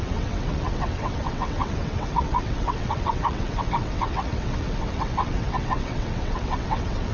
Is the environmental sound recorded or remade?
remade